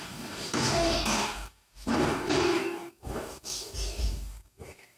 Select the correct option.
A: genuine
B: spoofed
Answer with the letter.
B